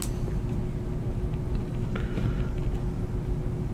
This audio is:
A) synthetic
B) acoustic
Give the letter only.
B